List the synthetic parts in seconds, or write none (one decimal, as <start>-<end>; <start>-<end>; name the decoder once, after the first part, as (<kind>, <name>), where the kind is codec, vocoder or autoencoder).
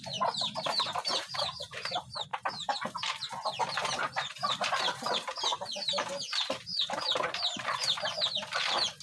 0.0-2.3 (vocoder, BigVGAN v2); 3.7-5.5; 6.6-9.0